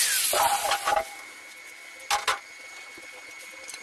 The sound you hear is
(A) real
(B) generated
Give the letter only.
A